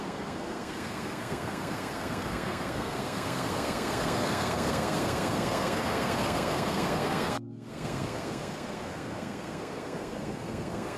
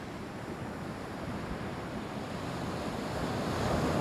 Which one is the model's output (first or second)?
first